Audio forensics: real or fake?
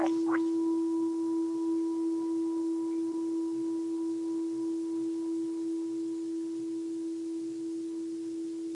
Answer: real